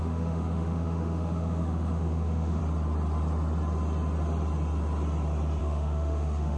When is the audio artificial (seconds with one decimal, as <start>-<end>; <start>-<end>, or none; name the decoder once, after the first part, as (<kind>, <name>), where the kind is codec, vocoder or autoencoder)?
0.0-2.6 (autoencoder, DAC-VAE); 5.6-6.6